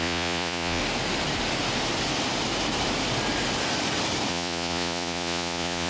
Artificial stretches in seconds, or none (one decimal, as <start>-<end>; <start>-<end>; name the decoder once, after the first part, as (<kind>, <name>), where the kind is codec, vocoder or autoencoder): 0.0-0.8 (vocoder, Vocos); 4.3-5.9